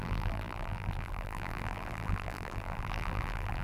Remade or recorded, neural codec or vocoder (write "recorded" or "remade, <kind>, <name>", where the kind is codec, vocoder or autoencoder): remade, vocoder, BigVGAN v2